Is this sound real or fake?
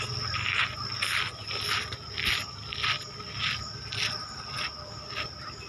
real